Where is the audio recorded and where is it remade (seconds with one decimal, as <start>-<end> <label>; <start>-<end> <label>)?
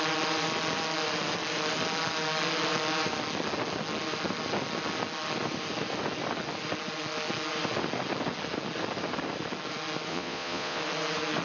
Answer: 0.0-10.1 recorded; 10.1-10.8 remade; 10.8-11.4 recorded